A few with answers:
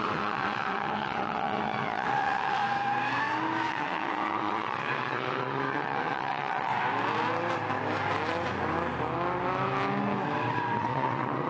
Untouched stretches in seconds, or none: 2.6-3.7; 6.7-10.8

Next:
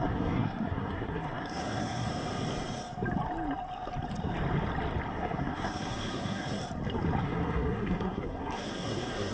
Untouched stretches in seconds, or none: 2.1-5.1; 6.6-7.2

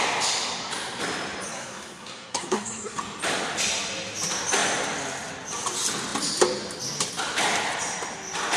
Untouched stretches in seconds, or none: 0.0-1.5; 3.0-8.6

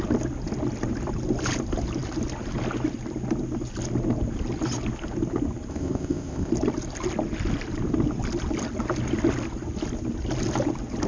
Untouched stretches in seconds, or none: 0.0-5.7; 6.5-11.1